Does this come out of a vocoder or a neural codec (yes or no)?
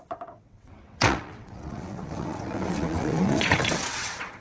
yes